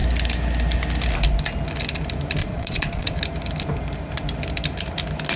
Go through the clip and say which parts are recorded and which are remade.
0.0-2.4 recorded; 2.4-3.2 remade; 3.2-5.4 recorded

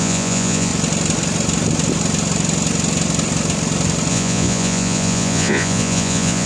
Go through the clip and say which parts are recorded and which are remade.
0.0-0.7 remade; 0.7-4.1 recorded; 4.1-6.5 remade

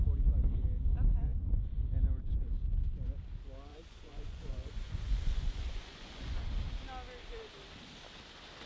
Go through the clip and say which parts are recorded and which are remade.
0.0-3.7 recorded; 3.7-6.4 remade; 6.4-8.7 recorded

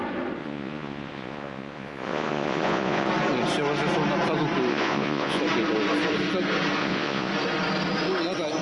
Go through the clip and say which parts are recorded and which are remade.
0.0-0.4 recorded; 0.4-3.1 remade; 3.1-4.7 recorded; 4.7-5.4 remade; 5.4-6.8 recorded; 6.8-7.3 remade; 7.3-8.6 recorded

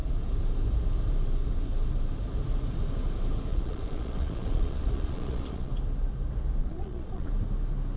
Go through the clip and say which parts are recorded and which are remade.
0.0-3.5 recorded; 3.5-5.7 remade; 5.7-6.6 recorded; 6.6-7.3 remade; 7.3-8.0 recorded

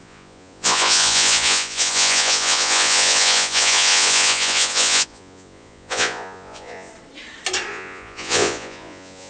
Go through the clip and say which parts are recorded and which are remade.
0.0-6.9 remade; 6.9-7.7 recorded; 7.7-9.3 remade

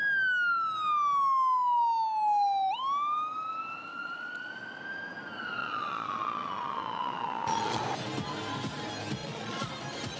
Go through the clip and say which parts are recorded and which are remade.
0.0-3.9 recorded; 3.9-4.5 remade; 4.5-5.6 recorded; 5.6-7.8 remade; 7.8-9.2 recorded; 9.2-9.7 remade; 9.7-10.2 recorded

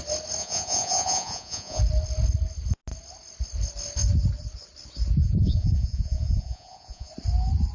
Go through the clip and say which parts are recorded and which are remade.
0.0-0.4 recorded; 0.4-1.8 remade; 1.8-5.2 recorded; 5.2-7.1 remade; 7.1-7.7 recorded